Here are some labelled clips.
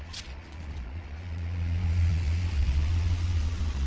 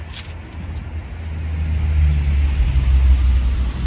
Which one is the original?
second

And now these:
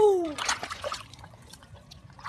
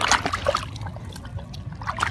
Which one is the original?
second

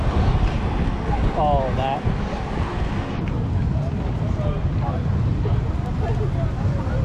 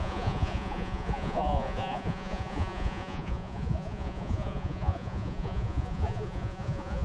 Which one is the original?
first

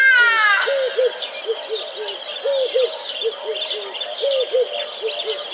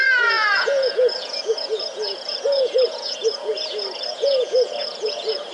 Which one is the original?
first